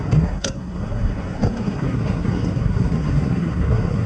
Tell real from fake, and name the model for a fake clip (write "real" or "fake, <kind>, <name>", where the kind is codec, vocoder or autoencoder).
fake, codec, SNAC